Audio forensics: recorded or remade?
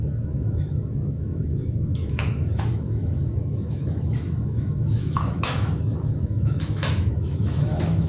remade